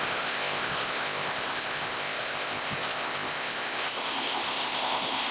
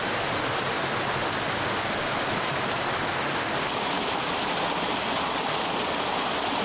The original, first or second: second